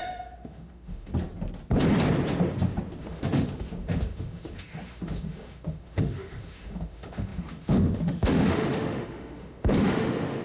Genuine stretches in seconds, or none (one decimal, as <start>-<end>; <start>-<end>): 1.1-3.0